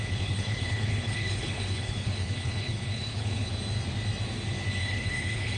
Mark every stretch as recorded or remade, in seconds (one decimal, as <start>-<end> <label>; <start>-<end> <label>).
0.0-3.5 remade; 3.5-4.8 recorded; 4.8-5.6 remade